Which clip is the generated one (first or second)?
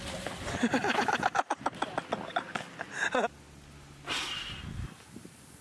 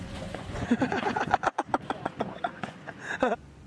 second